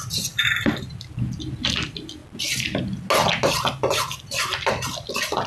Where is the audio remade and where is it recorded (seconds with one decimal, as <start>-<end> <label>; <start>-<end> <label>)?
0.0-5.5 recorded